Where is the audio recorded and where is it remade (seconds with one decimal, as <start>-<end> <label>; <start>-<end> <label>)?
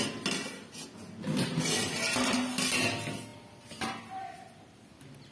0.0-5.3 recorded